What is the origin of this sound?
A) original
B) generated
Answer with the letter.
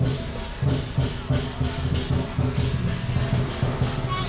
A